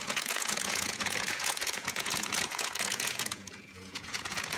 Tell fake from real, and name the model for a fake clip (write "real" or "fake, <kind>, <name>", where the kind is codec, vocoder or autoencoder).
fake, vocoder, Vocos